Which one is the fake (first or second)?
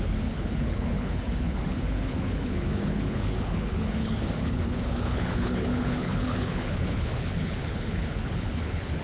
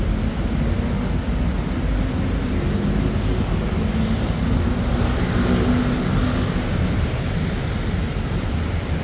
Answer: first